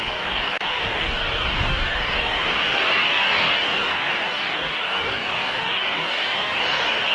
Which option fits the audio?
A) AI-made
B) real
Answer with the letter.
A